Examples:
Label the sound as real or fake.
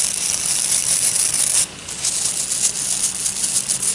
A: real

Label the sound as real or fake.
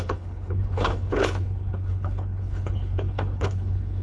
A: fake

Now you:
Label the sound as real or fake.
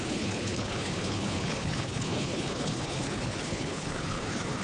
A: fake